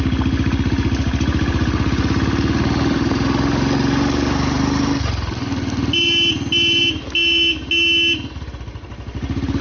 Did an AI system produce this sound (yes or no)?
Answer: no